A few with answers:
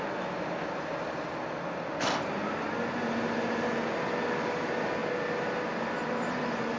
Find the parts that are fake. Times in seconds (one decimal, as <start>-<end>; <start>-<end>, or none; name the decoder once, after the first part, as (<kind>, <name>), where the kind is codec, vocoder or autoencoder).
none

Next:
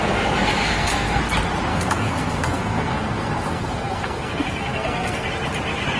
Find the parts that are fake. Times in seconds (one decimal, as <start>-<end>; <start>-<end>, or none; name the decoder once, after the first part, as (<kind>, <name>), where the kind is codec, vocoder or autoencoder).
0.0-1.2 (codec, SNAC); 1.7-5.3

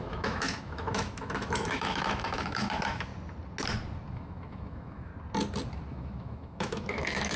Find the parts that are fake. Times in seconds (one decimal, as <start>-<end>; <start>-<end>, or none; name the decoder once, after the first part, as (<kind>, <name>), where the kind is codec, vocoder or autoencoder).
0.0-3.1 (autoencoder, DAC-VAE); 4.1-5.1; 5.9-7.4

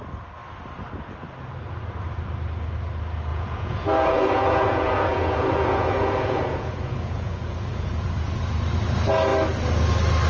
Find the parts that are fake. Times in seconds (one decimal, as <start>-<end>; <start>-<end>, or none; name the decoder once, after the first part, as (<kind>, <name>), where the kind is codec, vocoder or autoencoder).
3.3-7.9 (vocoder, Vocos)